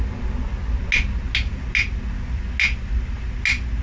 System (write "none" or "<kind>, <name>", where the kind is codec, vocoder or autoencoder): none